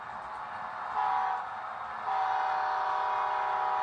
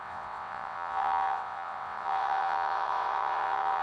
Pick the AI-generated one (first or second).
second